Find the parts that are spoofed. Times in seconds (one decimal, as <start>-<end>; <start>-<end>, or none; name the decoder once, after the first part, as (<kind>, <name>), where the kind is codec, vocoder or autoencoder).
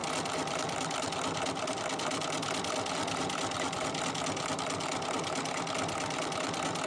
none